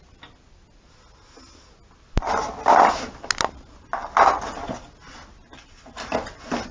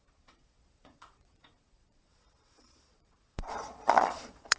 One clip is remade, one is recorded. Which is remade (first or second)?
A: second